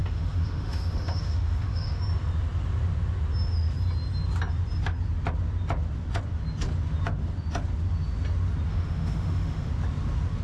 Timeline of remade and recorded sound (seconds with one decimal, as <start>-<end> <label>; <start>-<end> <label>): 0.0-2.0 remade; 2.0-8.7 recorded; 8.7-9.7 remade; 9.7-10.4 recorded